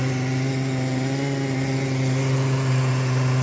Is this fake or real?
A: real